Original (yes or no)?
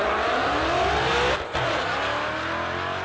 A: yes